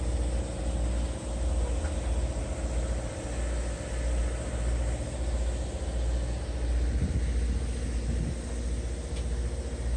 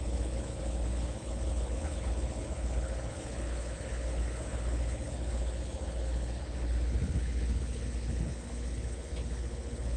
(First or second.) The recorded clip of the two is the first